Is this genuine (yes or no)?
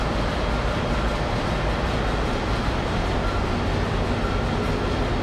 yes